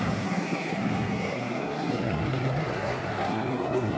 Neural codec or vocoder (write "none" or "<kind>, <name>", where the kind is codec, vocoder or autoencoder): codec, SNAC